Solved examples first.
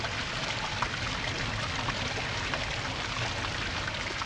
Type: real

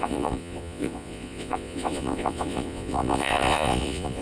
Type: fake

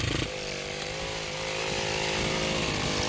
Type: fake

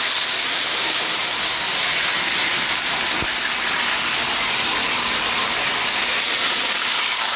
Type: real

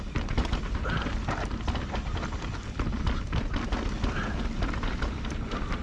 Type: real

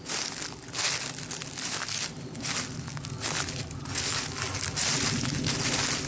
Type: real